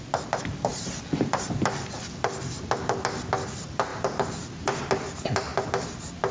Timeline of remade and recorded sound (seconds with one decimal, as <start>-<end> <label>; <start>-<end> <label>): 0.0-3.9 recorded; 3.9-4.9 remade; 4.9-6.3 recorded